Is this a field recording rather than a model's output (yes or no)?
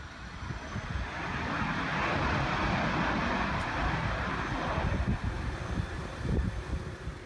yes